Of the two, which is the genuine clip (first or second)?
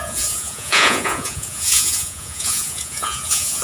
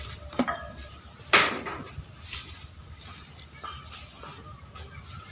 second